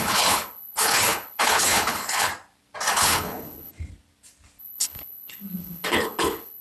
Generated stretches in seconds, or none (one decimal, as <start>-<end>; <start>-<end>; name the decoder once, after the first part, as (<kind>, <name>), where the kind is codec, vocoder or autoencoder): 0.0-2.3 (codec, HILCodec); 2.9-3.7; 4.6-6.6